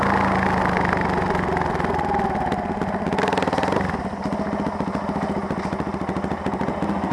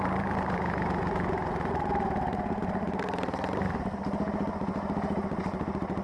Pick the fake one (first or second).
second